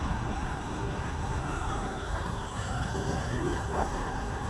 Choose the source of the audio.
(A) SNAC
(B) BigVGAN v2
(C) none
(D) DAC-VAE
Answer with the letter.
A